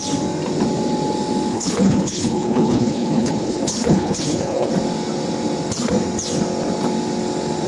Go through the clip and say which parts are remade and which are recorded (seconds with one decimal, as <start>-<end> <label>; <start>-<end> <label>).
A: 0.0-1.5 recorded; 1.5-4.7 remade; 4.7-7.7 recorded